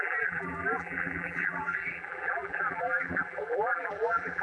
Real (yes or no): no